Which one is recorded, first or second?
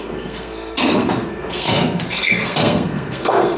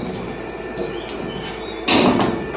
second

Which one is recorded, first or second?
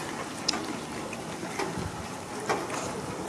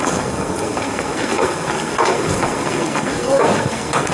first